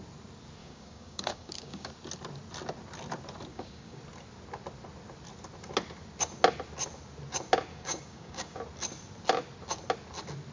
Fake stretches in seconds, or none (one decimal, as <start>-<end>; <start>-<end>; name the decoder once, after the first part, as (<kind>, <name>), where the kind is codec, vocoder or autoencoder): 0.6-1.9 (codec, DAC); 3.5-4.0; 7.7-8.6